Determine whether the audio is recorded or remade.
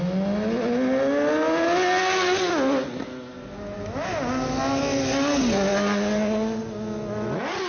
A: recorded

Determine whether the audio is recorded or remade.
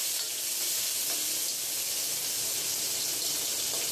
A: recorded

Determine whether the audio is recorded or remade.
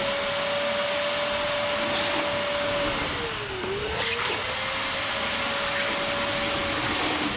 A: recorded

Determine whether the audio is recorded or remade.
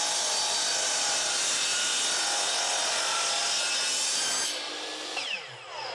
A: recorded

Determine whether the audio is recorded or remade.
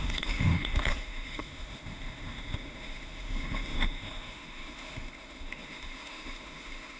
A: remade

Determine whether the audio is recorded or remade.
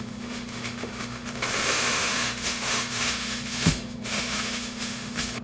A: remade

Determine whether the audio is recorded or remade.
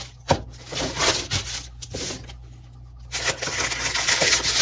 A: recorded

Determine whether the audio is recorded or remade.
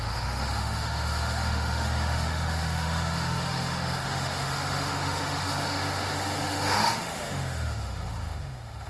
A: remade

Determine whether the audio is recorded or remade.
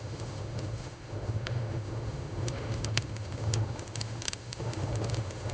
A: remade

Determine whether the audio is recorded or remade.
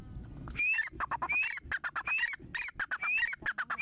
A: recorded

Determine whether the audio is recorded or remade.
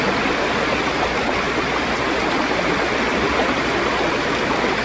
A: recorded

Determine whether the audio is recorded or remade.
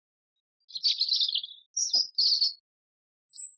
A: recorded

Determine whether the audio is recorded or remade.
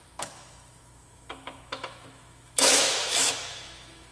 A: remade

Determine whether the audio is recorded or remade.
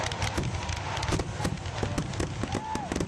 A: recorded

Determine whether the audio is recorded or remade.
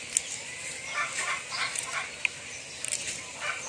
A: recorded